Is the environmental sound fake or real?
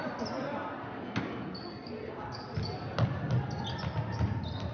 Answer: real